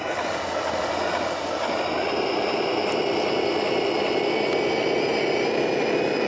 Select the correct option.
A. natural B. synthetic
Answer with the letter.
A